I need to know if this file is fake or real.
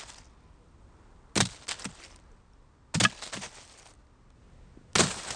real